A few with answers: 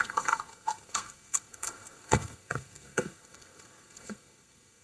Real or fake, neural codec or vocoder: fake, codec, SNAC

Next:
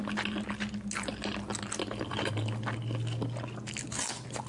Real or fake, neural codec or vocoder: real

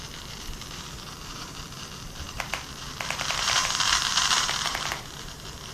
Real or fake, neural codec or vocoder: fake, vocoder, BigVGAN v2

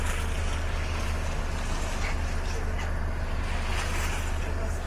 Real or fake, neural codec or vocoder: real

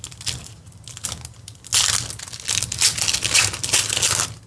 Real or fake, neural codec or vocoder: real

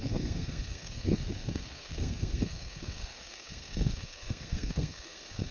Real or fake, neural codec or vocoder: fake, codec, SNAC